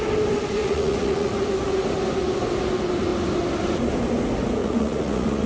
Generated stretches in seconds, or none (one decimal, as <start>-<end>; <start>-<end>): 0.6-1.3; 4.6-5.5